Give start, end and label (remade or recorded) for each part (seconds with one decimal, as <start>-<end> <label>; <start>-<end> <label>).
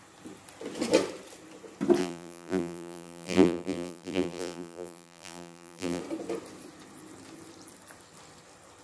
0.0-2.0 recorded; 2.0-6.0 remade; 6.0-8.8 recorded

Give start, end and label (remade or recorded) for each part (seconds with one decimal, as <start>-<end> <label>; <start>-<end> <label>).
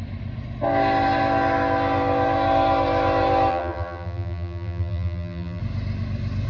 0.0-3.5 recorded; 3.5-5.6 remade; 5.6-6.5 recorded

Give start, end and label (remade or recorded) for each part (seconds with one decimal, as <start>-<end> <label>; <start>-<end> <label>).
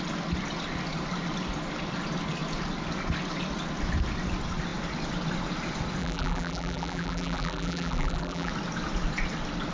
0.0-6.0 recorded; 6.0-8.5 remade; 8.5-9.7 recorded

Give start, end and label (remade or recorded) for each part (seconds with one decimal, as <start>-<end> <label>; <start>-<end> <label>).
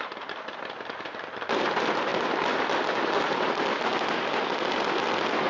0.0-3.9 remade; 3.9-4.8 recorded; 4.8-5.5 remade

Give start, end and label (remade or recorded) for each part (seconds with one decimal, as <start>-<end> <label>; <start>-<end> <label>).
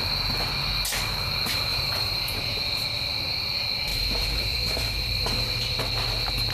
0.0-1.7 recorded; 1.7-2.6 remade; 2.6-3.9 recorded; 3.9-5.8 remade; 5.8-6.5 recorded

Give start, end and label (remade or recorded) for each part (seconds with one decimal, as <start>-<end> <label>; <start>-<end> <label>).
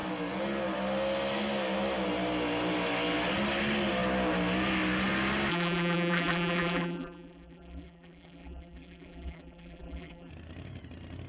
0.0-5.5 recorded; 5.5-10.3 remade; 10.3-11.3 recorded